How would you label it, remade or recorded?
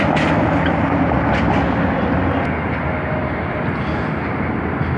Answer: recorded